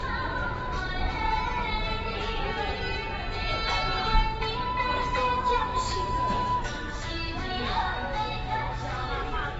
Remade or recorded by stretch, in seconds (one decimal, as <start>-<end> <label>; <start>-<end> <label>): 0.0-5.5 recorded; 5.5-9.6 remade

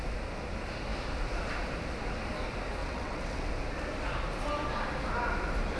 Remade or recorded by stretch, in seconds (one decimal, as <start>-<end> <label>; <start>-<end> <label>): 0.0-2.8 recorded; 2.8-3.5 remade; 3.5-5.8 recorded

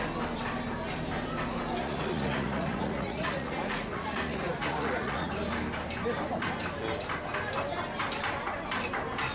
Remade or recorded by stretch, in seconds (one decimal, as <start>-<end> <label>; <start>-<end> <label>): 0.0-1.8 recorded; 1.8-5.3 remade; 5.3-9.3 recorded

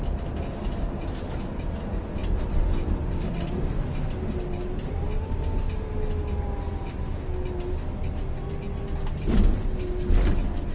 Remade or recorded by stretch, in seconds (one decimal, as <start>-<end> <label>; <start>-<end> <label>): 0.0-10.7 recorded